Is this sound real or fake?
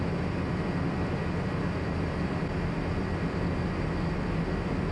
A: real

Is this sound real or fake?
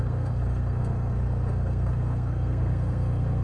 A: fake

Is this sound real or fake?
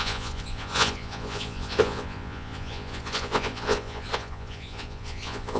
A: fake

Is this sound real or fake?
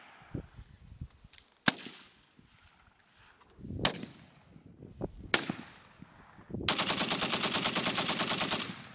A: real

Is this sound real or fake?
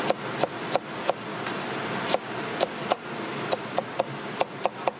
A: real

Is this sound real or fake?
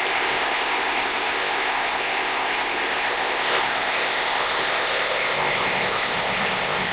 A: fake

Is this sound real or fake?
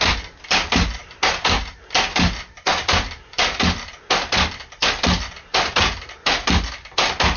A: real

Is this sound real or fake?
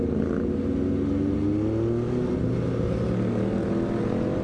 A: real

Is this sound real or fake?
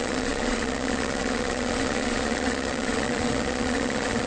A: fake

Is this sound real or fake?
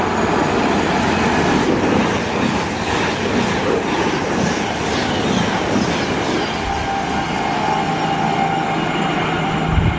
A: real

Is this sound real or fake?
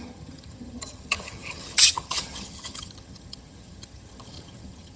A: fake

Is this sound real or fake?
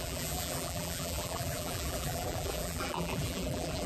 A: fake